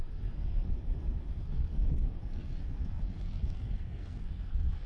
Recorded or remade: remade